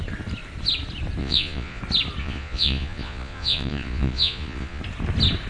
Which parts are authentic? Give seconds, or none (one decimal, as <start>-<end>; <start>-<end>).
0.0-1.2; 1.8-2.2; 4.8-5.5